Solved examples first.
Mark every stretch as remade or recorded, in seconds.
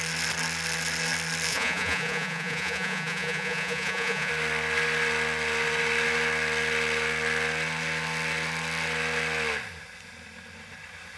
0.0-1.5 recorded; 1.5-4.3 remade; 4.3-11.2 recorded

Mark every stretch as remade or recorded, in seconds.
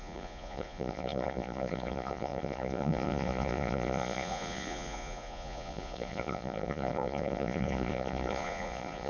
0.0-9.1 remade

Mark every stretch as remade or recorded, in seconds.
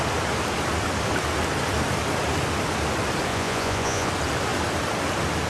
0.0-3.3 recorded; 3.3-4.1 remade; 4.1-5.5 recorded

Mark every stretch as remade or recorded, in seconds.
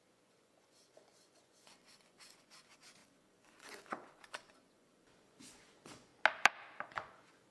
0.0-6.1 remade; 6.1-6.8 recorded; 6.8-7.5 remade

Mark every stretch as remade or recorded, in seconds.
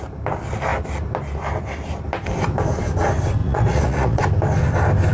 0.0-3.4 recorded; 3.4-4.2 remade; 4.2-5.1 recorded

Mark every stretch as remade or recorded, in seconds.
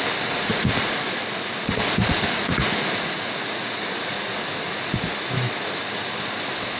0.0-0.5 recorded; 0.5-4.1 remade; 4.1-6.8 recorded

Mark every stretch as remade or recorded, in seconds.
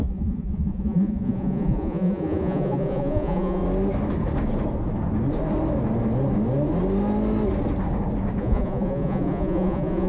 0.0-3.6 remade; 3.6-8.4 recorded; 8.4-10.1 remade